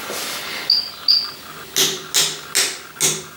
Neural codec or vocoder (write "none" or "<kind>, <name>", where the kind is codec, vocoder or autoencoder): none